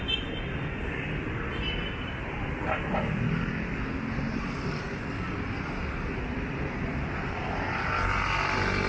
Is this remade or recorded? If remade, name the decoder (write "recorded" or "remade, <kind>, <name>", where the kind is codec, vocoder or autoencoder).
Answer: recorded